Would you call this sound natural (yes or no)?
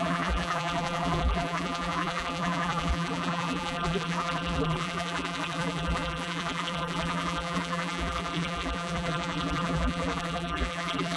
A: no